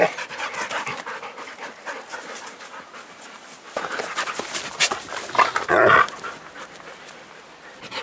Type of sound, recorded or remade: recorded